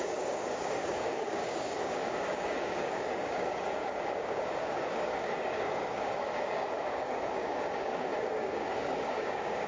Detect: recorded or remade remade